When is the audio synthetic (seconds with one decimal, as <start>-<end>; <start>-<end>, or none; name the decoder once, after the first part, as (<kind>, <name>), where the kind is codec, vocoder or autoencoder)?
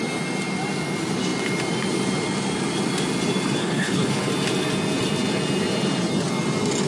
3.6-4.1 (codec, HILCodec)